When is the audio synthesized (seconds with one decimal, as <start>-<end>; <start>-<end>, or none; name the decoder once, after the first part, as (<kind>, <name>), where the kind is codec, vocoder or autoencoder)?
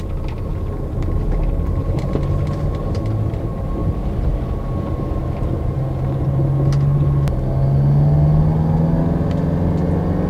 none